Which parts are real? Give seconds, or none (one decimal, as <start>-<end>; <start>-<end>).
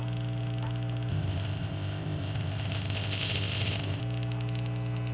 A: 0.0-1.1; 4.0-5.1